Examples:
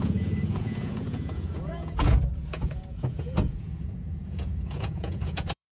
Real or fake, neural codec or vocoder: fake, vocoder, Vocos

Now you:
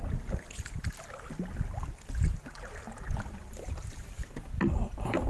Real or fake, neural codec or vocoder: real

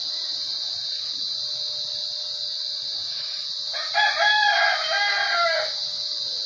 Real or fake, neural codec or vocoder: real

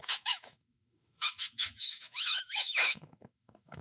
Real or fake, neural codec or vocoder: fake, autoencoder, DAC-VAE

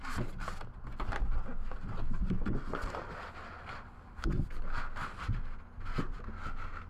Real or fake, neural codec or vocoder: real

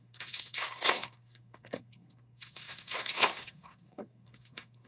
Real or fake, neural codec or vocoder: fake, codec, SNAC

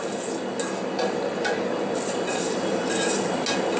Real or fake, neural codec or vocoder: real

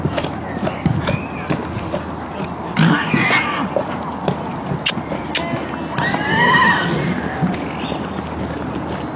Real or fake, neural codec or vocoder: real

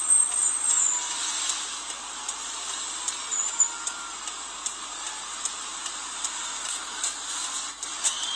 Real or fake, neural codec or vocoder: real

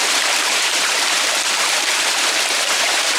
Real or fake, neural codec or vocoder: fake, vocoder, BigVGAN v2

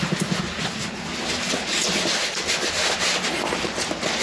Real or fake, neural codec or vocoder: real